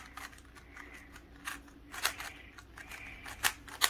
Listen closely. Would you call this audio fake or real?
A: real